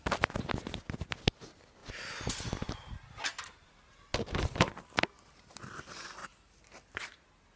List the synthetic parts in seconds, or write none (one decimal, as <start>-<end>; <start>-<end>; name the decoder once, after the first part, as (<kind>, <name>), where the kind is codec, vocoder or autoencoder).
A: none